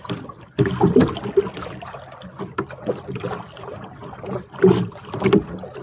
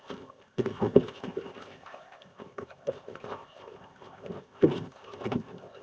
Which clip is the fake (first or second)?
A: second